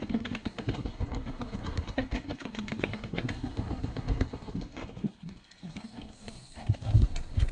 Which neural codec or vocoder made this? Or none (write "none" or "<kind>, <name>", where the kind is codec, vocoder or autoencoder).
codec, SNAC